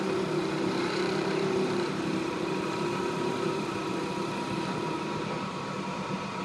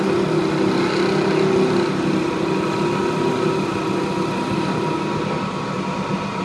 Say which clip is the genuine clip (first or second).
second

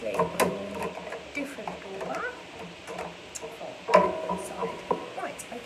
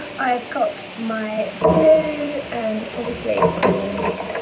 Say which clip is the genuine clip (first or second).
first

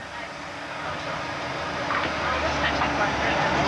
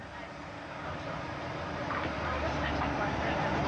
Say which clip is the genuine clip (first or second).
first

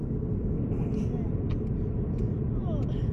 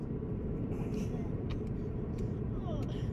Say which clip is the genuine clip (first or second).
first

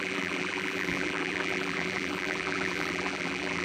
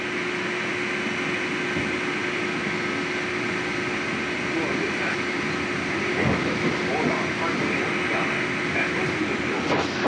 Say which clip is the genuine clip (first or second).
second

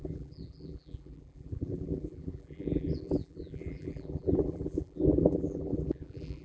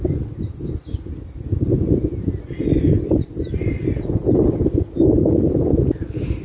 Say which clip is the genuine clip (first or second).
second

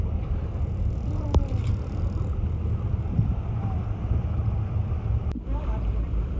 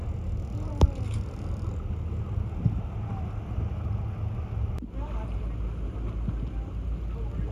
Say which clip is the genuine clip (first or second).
second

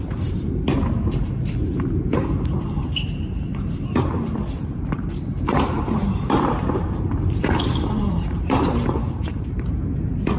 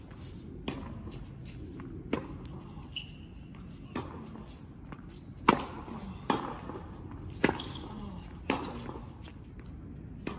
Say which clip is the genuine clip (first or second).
second